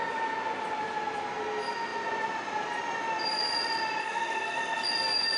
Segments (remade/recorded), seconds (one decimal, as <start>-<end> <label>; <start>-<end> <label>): 0.0-4.0 recorded; 4.0-4.9 remade; 4.9-5.4 recorded